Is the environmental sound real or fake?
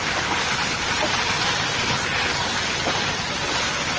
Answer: real